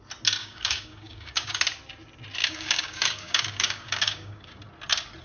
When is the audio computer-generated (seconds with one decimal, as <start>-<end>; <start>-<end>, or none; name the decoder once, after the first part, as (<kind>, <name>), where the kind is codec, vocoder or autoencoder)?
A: 0.4-1.6 (codec, DAC); 2.4-4.6